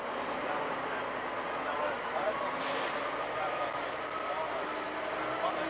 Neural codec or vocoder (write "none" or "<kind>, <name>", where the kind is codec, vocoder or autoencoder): none